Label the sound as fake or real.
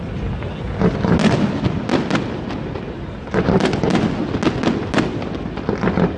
real